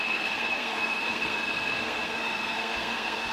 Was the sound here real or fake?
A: fake